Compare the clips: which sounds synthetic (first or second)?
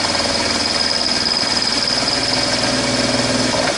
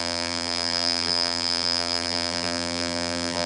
second